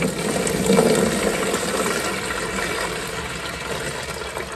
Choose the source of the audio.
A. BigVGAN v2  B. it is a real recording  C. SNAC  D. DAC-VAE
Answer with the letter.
B